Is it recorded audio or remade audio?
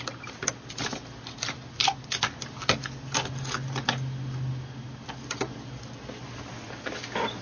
recorded